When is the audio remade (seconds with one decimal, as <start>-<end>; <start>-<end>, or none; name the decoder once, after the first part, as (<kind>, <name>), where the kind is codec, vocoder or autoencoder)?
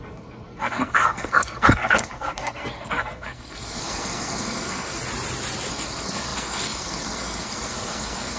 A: 0.0-5.0 (codec, SNAC); 5.7-8.4